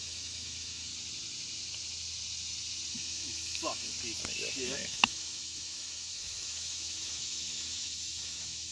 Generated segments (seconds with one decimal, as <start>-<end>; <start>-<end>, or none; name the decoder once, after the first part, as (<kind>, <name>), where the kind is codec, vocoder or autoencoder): 0.0-0.9 (autoencoder, DAC-VAE); 2.9-3.9; 4.7-8.7